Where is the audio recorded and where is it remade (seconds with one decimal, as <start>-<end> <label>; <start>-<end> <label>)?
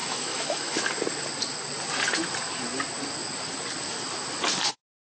0.0-0.8 remade; 0.8-5.1 recorded